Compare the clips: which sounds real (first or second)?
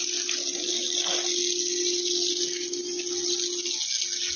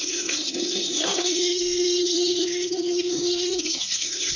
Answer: first